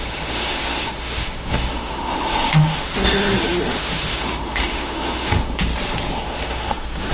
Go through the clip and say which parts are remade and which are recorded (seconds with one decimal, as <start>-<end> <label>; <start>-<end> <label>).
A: 0.0-2.9 remade; 2.9-3.7 recorded; 3.7-5.7 remade; 5.7-6.2 recorded; 6.2-7.1 remade